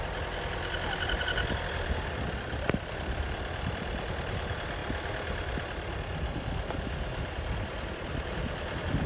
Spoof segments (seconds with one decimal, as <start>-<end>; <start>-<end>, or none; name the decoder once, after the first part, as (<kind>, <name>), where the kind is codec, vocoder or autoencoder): 0.0-4.8 (vocoder, BigVGAN v2); 7.9-9.1